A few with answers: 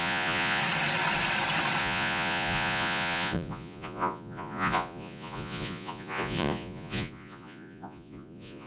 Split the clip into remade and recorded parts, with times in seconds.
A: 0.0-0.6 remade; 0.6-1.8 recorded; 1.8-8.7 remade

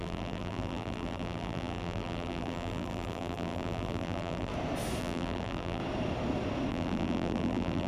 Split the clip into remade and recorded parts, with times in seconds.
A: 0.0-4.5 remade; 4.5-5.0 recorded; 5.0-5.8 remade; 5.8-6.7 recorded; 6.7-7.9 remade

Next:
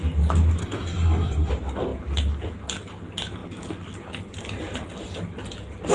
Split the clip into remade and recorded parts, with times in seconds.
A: 0.0-0.6 recorded; 0.6-1.5 remade; 1.5-5.9 recorded

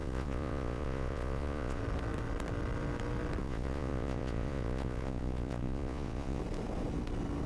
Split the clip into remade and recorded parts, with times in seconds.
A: 0.0-1.8 remade; 1.8-3.4 recorded; 3.4-6.4 remade; 6.4-7.5 recorded

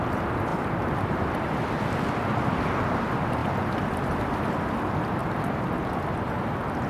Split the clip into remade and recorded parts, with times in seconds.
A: 0.0-0.5 recorded; 0.5-1.3 remade; 1.3-5.2 recorded; 5.2-5.8 remade; 5.8-6.9 recorded